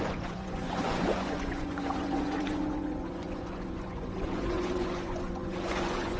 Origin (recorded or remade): remade